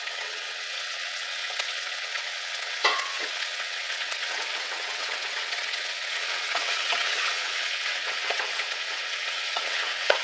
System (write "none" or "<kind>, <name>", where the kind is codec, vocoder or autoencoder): vocoder, WaveNeXt